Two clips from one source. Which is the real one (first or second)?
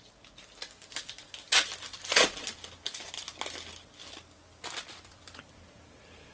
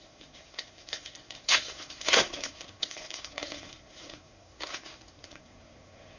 first